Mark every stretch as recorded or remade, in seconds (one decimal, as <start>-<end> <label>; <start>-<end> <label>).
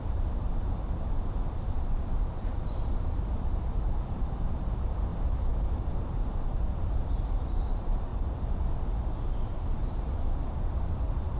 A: 0.0-5.1 remade; 5.1-5.8 recorded; 5.8-8.1 remade; 8.1-9.5 recorded; 9.5-11.4 remade